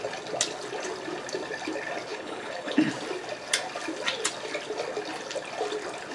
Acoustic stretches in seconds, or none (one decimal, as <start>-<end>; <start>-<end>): 0.0-2.1; 2.9-6.1